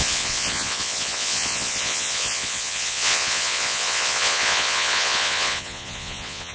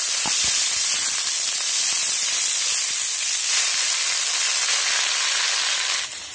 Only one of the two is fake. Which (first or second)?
first